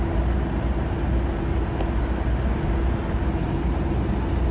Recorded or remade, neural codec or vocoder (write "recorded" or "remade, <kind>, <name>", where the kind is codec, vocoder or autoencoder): recorded